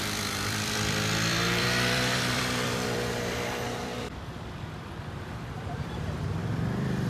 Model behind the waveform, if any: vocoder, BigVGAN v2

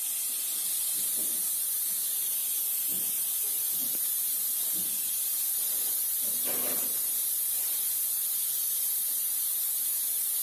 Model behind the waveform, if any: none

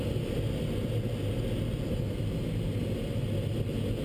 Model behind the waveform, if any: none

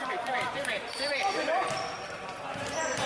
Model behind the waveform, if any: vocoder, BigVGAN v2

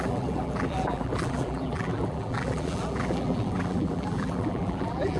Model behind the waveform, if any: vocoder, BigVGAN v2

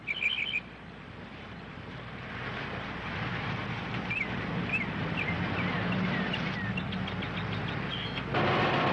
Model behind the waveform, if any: none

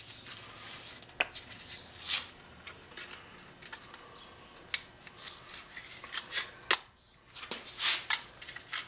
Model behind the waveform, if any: none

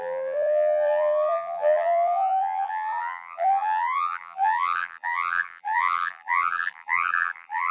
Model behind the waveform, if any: vocoder, BigVGAN v2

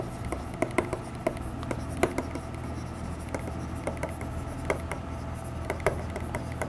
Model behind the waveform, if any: none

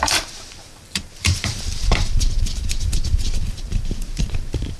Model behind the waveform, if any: vocoder, BigVGAN v2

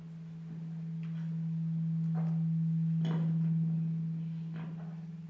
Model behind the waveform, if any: none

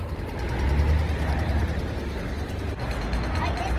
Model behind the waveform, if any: none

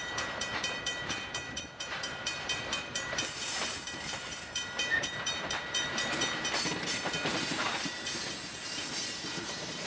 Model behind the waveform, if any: vocoder, BigVGAN v2